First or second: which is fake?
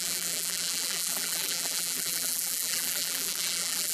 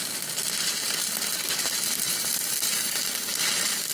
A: first